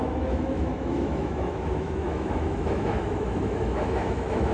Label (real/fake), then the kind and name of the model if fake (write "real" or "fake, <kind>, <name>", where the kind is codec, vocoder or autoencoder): fake, autoencoder, DAC-VAE